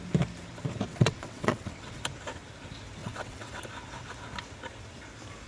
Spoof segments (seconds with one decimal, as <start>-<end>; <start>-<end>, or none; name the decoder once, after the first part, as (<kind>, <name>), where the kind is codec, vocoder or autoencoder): 0.9-2.0 (vocoder, WaveNeXt); 3.0-3.6